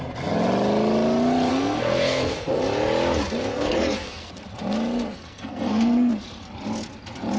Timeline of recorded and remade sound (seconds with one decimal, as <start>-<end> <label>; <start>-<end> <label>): 0.0-1.5 recorded; 1.5-2.5 remade; 2.5-3.5 recorded; 3.5-4.3 remade; 4.3-5.1 recorded; 5.1-6.1 remade; 6.1-7.4 recorded